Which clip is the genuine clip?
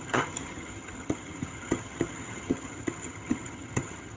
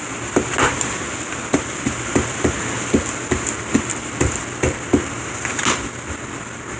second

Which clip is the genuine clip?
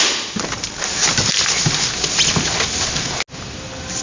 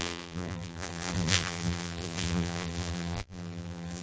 first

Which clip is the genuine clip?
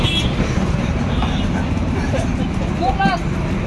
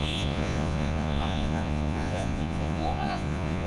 first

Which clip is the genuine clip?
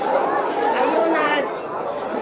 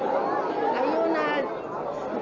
second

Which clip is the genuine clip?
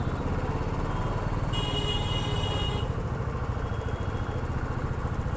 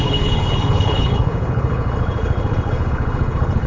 first